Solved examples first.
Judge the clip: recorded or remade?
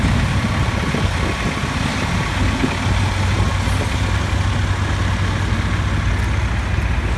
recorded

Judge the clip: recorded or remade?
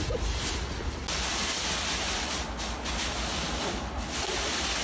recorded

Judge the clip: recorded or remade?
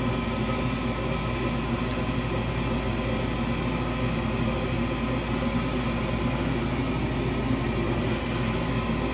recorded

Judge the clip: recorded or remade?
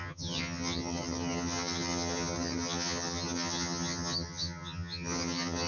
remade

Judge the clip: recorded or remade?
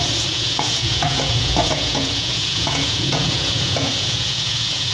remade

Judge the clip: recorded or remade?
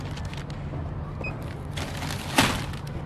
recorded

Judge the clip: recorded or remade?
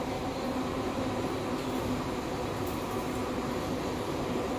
recorded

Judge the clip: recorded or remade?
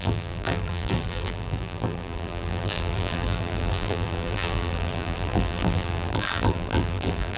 remade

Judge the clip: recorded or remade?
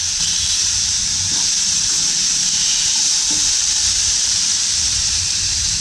remade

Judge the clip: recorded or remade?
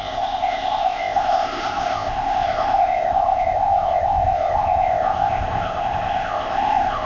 remade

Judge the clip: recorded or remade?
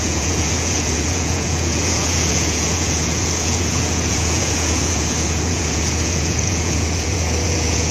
remade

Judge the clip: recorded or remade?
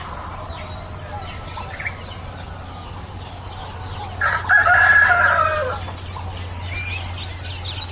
recorded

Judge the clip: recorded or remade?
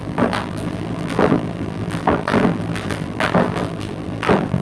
remade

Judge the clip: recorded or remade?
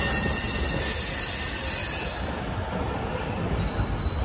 recorded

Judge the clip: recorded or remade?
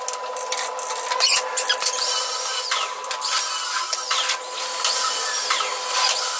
recorded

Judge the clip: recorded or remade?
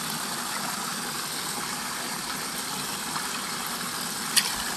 recorded